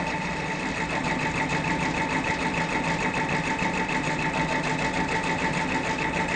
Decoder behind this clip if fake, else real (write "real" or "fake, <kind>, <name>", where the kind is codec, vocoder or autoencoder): real